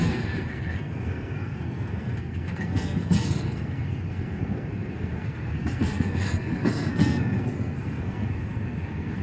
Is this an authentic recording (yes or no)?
no